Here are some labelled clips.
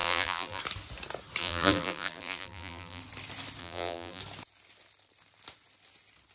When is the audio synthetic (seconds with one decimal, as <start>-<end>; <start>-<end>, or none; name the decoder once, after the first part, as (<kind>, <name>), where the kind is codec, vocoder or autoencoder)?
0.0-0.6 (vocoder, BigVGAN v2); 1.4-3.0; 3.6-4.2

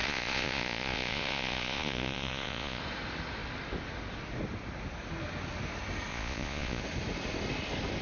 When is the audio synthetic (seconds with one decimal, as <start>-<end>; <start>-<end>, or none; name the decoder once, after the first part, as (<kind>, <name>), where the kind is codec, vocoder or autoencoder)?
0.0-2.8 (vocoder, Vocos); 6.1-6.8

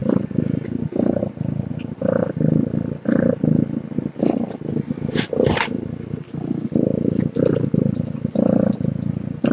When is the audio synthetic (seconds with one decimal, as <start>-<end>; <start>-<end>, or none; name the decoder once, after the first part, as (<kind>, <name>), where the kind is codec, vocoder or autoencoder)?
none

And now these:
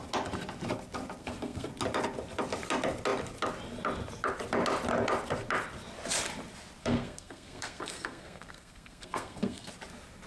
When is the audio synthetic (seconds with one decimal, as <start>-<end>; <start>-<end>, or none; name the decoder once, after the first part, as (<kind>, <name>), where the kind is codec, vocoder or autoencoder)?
1.2-1.7 (codec, SNAC); 6.8-9.7

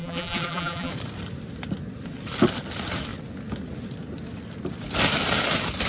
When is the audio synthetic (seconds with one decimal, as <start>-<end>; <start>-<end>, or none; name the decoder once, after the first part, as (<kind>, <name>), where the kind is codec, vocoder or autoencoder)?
0.0-0.9 (vocoder, BigVGAN v2)

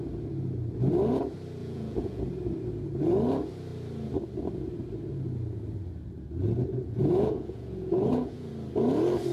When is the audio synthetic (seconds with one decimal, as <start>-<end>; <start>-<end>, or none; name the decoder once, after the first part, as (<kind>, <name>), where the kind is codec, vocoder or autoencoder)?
1.6-2.2 (vocoder, Vocos); 7.0-8.5

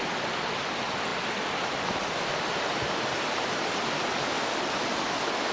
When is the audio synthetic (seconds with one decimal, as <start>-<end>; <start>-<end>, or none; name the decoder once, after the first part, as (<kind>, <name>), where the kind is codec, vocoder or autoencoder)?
none